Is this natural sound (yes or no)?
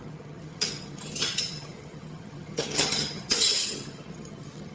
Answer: no